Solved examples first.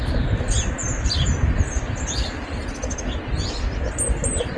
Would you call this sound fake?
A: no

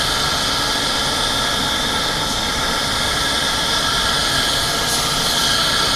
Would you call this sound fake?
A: no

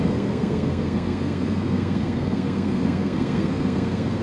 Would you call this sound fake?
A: yes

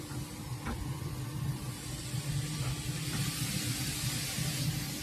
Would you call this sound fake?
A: no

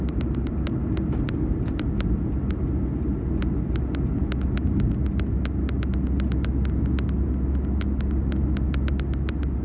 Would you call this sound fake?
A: no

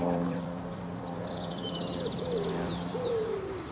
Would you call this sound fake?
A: yes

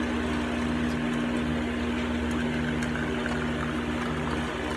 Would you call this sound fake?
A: no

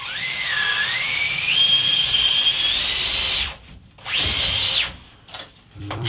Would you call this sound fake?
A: yes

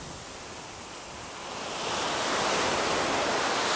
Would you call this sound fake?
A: no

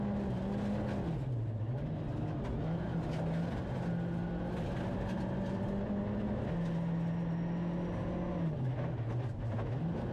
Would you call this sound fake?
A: no